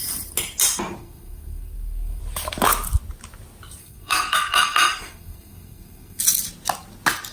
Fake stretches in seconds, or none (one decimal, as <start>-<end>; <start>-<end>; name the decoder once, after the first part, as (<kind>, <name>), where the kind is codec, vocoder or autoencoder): 1.0-2.2 (codec, SNAC); 3.8-6.2

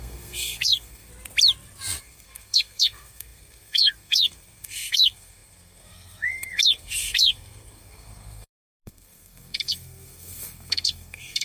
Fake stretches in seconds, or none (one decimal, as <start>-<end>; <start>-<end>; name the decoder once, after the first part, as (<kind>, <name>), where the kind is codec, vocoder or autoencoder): 0.0-1.1 (codec, SNAC); 2.0-11.4